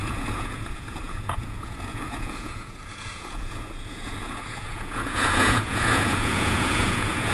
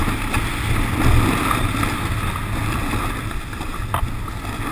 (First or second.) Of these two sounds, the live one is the second